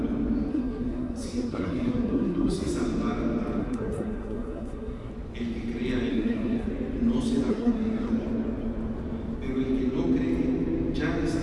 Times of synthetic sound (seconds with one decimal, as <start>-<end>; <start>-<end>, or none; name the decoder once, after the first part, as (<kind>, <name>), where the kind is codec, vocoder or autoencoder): 0.5-2.7 (codec, SNAC); 3.6-5.1; 6.1-6.7; 7.5-8.1